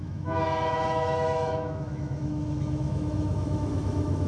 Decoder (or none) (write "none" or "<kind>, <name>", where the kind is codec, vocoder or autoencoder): autoencoder, DAC-VAE